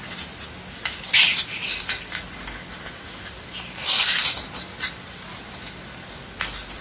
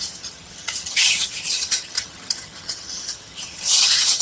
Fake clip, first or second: second